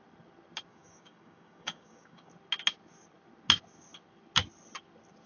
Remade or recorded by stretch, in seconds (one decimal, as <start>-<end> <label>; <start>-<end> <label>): 0.0-0.7 recorded; 0.7-2.3 remade; 2.3-5.3 recorded